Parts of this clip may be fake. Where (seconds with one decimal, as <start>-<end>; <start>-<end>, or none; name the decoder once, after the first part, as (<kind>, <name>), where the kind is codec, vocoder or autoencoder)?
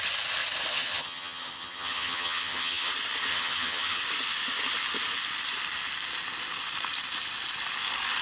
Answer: 0.7-2.9 (vocoder, HiFi-GAN); 3.3-4.0